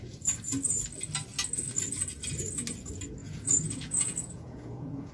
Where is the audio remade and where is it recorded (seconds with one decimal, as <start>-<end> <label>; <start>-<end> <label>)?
0.0-3.2 recorded; 3.2-5.1 remade